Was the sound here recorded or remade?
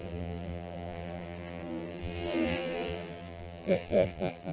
remade